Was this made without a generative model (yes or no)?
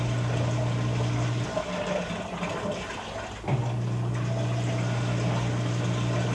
yes